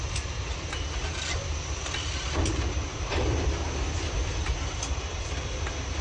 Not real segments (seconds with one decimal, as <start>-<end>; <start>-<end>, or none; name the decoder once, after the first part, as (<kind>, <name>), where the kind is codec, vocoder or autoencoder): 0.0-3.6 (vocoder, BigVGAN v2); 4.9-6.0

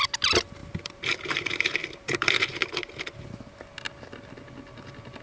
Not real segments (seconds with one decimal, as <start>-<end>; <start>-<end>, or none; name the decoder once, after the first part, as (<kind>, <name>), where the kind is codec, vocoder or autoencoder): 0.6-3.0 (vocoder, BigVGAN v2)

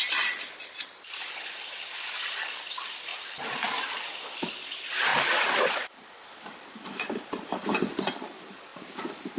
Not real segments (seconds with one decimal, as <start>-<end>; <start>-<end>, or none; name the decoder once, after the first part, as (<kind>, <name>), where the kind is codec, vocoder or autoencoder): 0.0-3.1 (vocoder, BigVGAN v2); 4.1-8.7

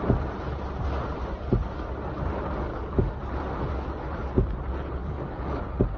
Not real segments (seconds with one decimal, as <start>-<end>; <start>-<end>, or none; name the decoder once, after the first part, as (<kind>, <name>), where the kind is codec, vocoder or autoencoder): 2.7-3.3 (codec, DAC); 5.0-5.6